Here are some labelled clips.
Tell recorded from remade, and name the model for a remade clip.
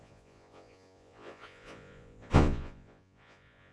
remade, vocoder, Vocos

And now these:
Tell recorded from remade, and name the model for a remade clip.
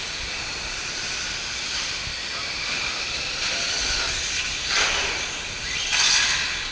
recorded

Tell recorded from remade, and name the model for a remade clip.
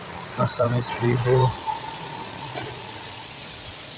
remade, vocoder, Vocos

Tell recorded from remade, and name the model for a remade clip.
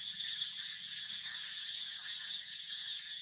remade, vocoder, Vocos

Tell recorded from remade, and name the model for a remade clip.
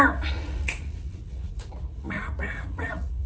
remade, vocoder, Vocos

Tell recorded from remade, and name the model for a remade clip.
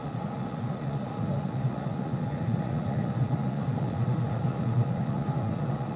remade, vocoder, Vocos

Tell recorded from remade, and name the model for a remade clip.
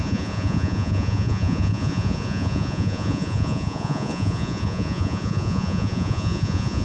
remade, vocoder, Vocos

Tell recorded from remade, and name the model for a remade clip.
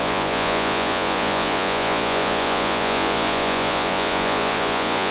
remade, vocoder, Vocos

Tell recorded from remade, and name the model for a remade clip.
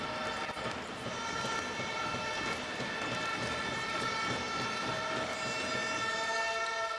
recorded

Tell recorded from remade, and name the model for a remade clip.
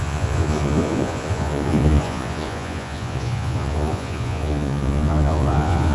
remade, vocoder, Vocos